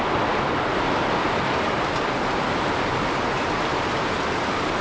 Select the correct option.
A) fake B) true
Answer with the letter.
B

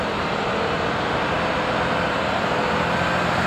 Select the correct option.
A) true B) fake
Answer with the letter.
A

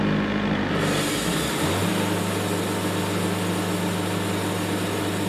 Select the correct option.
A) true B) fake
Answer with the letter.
A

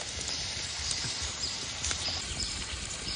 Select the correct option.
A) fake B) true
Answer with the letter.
A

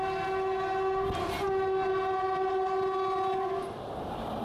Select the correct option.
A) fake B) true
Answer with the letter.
B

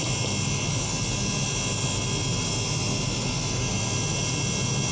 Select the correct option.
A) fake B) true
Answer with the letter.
B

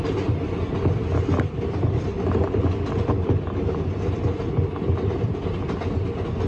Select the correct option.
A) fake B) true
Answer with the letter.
B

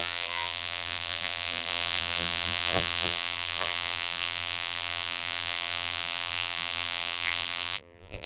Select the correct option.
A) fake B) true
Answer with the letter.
A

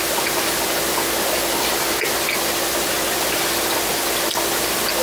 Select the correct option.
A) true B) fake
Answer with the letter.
A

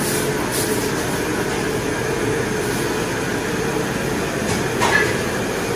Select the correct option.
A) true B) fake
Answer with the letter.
A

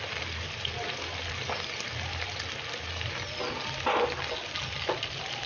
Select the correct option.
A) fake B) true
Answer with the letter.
B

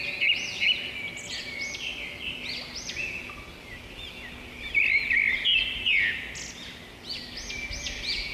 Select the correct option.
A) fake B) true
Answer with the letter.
B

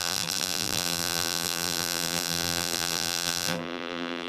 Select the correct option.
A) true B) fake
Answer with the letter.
B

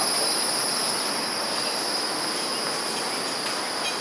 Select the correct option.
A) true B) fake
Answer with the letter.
A